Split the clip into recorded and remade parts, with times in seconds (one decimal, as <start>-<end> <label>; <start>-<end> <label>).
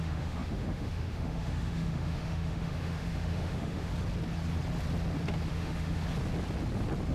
0.0-3.9 remade; 3.9-5.5 recorded; 5.5-6.0 remade; 6.0-7.1 recorded